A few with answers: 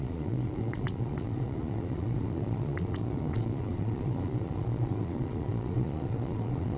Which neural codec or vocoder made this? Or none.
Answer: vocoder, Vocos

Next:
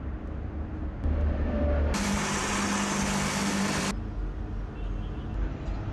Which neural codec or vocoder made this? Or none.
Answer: none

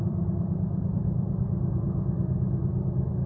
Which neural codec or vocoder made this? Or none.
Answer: vocoder, BigVGAN v2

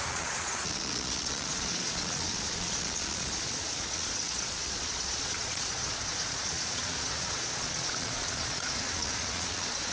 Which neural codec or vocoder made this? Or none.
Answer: vocoder, Vocos